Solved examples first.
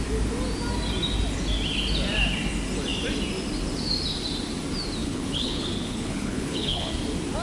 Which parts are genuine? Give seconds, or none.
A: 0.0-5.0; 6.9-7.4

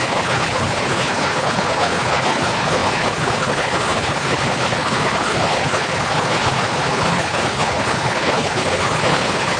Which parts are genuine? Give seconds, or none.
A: none

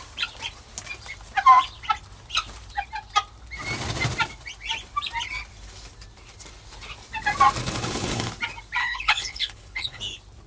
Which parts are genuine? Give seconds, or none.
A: 0.0-7.6; 8.3-8.8; 10.0-10.5